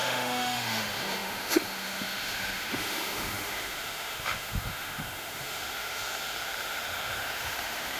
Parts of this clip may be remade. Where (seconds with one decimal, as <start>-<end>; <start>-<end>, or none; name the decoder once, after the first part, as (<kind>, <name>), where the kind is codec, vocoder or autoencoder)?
0.0-8.0 (autoencoder, DAC-VAE)